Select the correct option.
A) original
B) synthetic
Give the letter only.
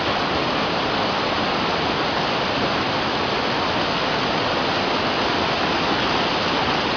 A